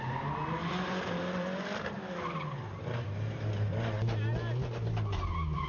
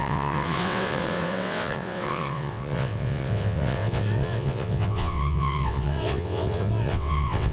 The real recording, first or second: first